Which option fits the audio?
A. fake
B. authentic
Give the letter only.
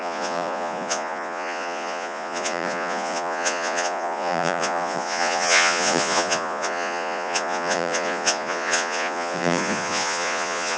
A